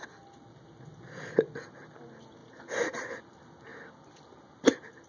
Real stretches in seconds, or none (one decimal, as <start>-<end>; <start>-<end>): 0.0-5.1